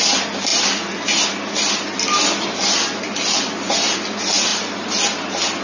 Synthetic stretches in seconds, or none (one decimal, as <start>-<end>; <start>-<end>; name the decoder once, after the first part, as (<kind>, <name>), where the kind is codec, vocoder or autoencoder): none